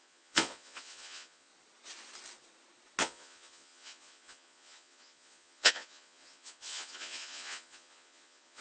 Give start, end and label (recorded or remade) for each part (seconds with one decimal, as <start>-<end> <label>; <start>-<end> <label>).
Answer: 0.0-1.5 remade; 1.5-3.0 recorded; 3.0-8.6 remade